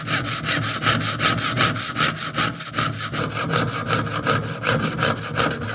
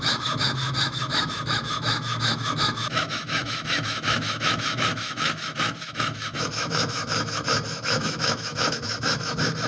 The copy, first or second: second